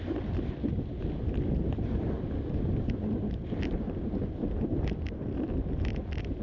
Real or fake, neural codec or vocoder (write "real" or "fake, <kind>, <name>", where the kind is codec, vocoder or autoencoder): real